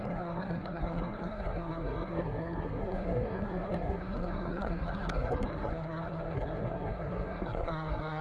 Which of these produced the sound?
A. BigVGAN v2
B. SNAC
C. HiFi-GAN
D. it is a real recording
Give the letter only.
B